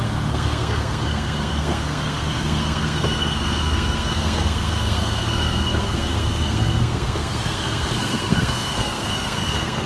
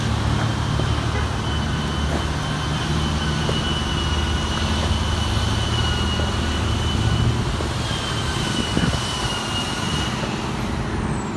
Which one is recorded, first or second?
second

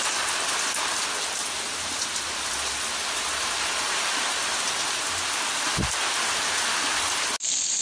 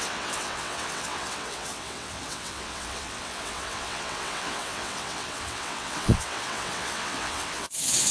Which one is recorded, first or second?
first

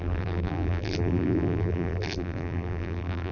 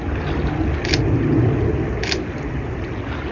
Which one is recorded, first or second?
second